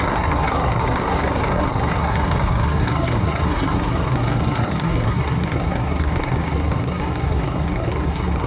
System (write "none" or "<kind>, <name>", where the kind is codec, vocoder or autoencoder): codec, SNAC